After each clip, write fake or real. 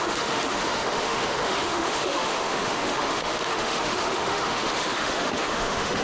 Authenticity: fake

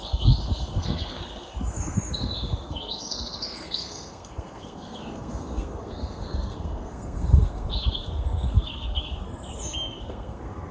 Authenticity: fake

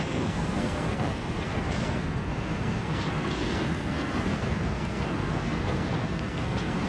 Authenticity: fake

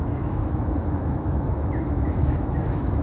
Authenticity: fake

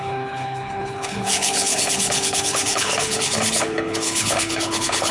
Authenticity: fake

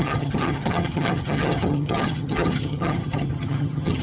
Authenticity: fake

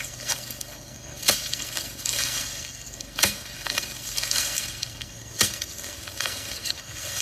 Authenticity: fake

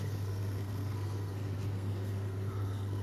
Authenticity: fake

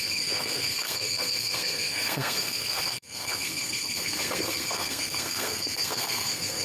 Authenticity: fake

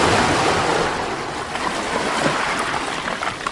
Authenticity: real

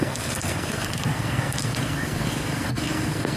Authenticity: fake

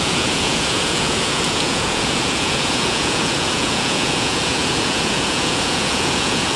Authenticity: fake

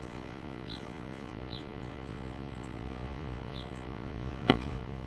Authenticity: fake